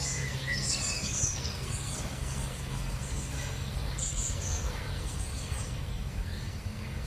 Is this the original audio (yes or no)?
no